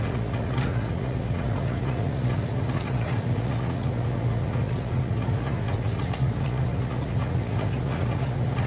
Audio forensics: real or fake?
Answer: fake